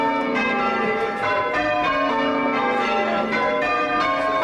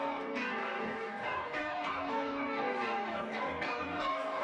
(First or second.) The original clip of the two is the first